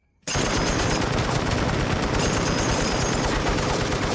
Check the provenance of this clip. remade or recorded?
recorded